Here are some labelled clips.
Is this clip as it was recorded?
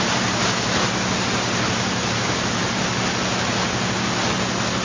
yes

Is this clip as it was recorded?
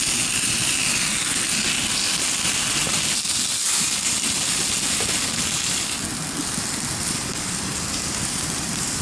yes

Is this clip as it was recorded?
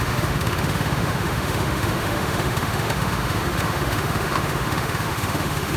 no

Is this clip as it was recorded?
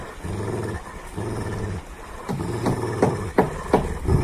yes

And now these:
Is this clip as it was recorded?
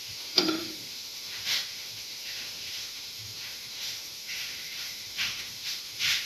no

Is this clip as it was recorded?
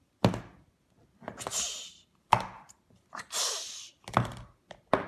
yes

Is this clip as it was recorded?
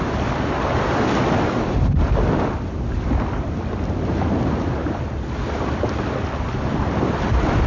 yes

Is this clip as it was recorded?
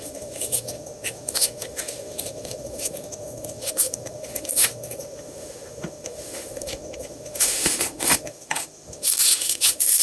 no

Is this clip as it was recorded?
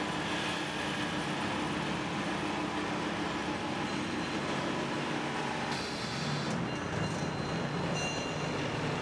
yes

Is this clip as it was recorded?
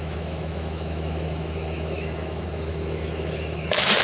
no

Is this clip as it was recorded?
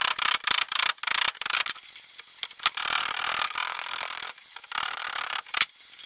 yes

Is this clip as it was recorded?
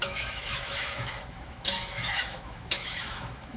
no